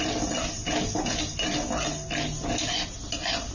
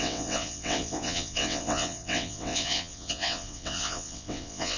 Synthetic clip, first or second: second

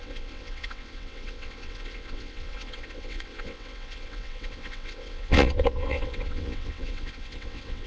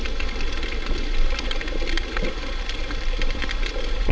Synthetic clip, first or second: first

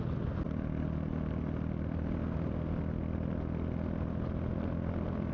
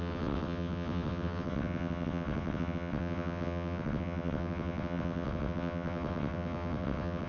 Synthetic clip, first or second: second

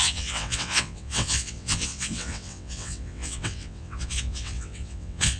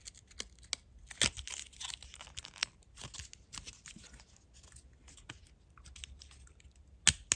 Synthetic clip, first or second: first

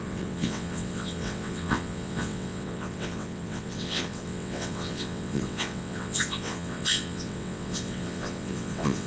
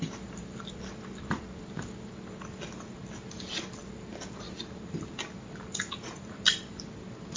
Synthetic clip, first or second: first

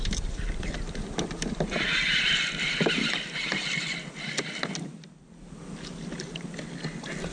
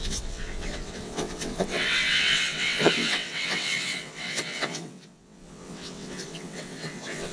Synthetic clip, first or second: second